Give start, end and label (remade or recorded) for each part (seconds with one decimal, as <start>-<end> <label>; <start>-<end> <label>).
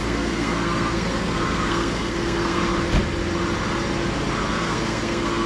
0.0-2.7 remade; 2.7-4.5 recorded; 4.5-5.5 remade